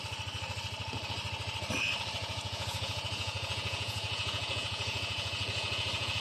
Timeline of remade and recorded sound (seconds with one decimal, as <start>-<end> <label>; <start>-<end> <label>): 0.0-2.2 recorded; 2.2-6.2 remade